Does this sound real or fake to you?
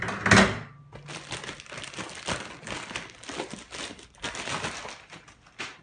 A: real